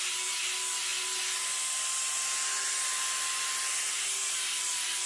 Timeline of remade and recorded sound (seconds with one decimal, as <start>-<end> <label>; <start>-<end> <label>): 0.0-5.1 recorded